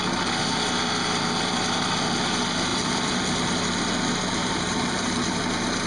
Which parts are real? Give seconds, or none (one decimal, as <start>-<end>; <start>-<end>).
0.0-2.7; 3.6-4.4; 5.4-5.9